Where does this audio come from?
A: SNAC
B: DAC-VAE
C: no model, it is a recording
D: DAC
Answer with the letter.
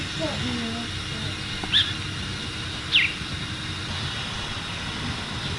C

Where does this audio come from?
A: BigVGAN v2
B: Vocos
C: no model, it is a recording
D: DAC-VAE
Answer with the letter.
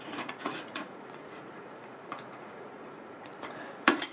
B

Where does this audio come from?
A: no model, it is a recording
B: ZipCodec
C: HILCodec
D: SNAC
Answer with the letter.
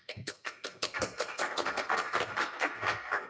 D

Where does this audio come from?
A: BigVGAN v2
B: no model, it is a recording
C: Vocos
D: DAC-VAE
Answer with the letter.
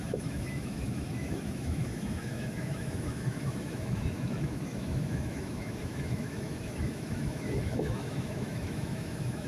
D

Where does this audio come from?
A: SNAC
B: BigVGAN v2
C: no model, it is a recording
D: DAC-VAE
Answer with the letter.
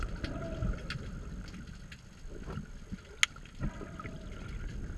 C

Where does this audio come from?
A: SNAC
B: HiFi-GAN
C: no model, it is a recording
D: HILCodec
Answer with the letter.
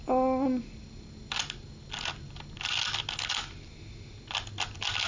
C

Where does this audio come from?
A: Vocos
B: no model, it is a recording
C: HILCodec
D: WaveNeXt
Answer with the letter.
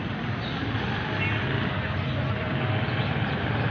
B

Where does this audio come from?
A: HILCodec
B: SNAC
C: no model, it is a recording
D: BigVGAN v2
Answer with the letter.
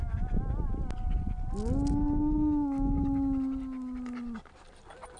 C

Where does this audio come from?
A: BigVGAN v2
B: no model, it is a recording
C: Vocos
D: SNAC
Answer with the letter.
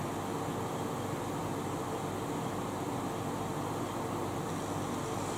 B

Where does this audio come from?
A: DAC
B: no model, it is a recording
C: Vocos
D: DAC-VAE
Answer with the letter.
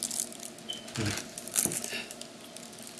B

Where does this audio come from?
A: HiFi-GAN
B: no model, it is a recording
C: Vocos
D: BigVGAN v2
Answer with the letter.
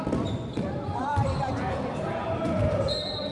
D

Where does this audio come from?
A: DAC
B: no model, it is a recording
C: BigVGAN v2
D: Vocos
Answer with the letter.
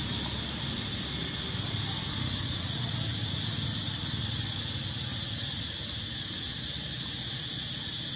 B